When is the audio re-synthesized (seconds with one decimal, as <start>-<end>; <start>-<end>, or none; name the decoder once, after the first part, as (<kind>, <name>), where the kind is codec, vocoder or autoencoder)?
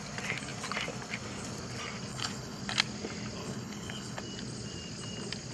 2.1-2.6 (codec, HILCodec); 3.4-4.2